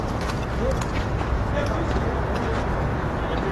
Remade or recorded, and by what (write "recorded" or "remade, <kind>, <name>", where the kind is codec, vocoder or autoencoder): recorded